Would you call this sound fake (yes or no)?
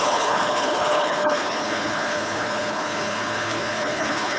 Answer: yes